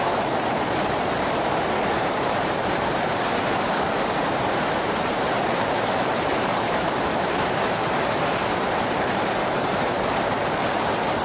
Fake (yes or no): yes